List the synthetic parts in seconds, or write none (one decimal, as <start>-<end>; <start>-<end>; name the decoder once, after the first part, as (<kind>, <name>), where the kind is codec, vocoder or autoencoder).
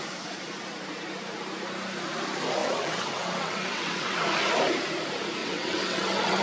2.6-4.2 (vocoder, WaveNeXt); 5.4-6.4